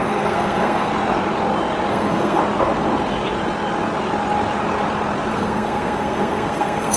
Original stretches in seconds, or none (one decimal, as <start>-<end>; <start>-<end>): 0.9-1.9; 2.4-5.3